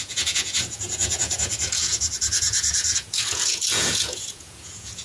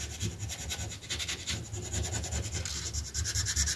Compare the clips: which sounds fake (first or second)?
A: first